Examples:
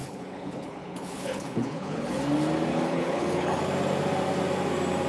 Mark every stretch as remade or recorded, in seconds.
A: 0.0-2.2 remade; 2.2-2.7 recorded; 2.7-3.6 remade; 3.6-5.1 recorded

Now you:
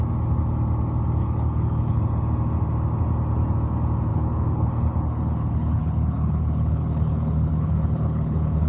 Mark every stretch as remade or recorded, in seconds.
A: 0.0-1.2 recorded; 1.2-2.0 remade; 2.0-4.1 recorded; 4.1-8.7 remade

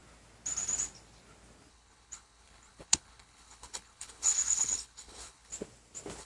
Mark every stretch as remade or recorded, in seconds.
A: 0.0-1.7 recorded; 1.7-5.5 remade; 5.5-6.2 recorded

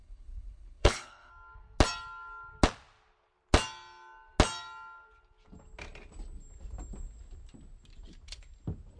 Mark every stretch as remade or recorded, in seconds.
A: 0.0-1.3 remade; 1.3-9.0 recorded

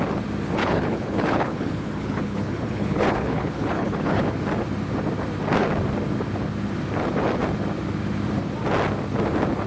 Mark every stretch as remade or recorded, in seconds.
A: 0.0-0.6 recorded; 0.6-4.3 remade; 4.3-9.7 recorded

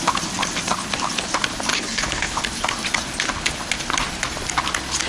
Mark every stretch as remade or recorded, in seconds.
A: 0.0-1.7 recorded; 1.7-2.4 remade; 2.4-5.1 recorded

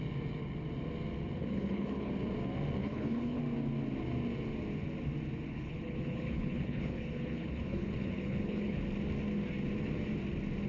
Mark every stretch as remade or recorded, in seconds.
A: 0.0-1.4 recorded; 1.4-2.1 remade; 2.1-2.8 recorded; 2.8-3.4 remade; 3.4-5.5 recorded; 5.5-8.8 remade; 8.8-10.7 recorded